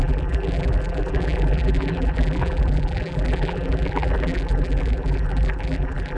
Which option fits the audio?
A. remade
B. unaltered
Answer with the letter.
A